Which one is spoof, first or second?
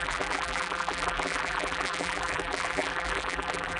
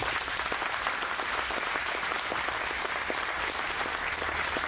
first